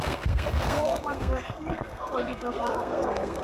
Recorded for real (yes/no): no